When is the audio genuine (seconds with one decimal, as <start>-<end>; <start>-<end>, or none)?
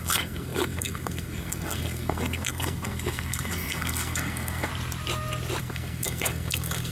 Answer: 4.7-5.6